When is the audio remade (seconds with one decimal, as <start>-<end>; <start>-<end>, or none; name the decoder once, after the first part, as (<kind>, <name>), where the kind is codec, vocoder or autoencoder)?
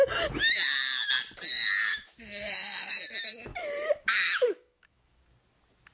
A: 1.9-3.0 (autoencoder, DAC-VAE); 3.5-5.2